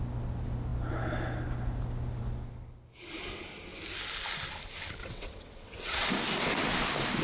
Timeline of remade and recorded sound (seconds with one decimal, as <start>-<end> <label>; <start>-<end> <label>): 0.0-5.0 recorded; 5.0-6.1 remade; 6.1-7.2 recorded